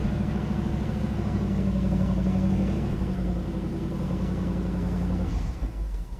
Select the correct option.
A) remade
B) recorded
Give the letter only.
A